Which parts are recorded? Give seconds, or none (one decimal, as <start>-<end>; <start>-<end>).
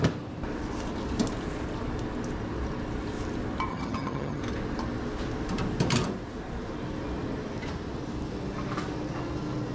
0.0-3.7; 4.4-9.7